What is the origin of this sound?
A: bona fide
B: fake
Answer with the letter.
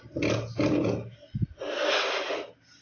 A